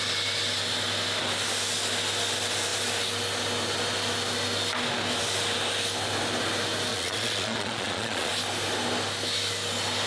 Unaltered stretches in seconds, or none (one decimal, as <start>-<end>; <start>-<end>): 0.0-6.9; 8.3-10.1